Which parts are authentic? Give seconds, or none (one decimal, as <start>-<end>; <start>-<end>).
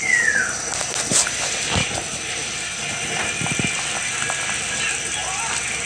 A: 0.0-5.9